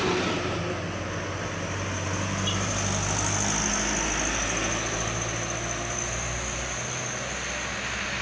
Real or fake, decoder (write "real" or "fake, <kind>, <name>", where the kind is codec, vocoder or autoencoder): real